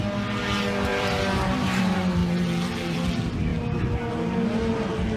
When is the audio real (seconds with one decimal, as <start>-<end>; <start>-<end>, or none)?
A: 0.0-0.9; 1.8-2.2; 3.1-5.2